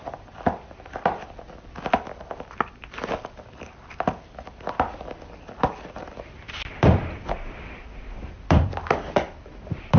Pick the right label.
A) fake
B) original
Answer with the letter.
A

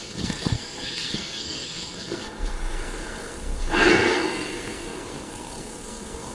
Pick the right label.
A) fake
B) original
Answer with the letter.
A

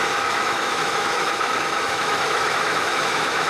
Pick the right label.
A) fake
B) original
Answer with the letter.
A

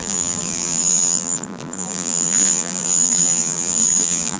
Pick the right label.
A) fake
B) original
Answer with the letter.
A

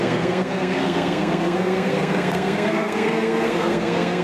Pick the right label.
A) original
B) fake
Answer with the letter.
B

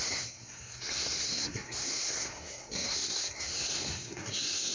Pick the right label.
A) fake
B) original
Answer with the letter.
A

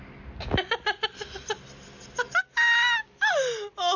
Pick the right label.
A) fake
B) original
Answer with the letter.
B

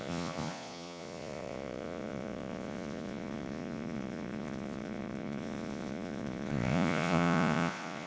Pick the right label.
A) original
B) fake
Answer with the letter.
B